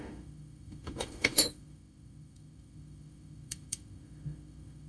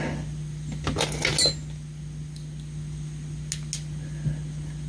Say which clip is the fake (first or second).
first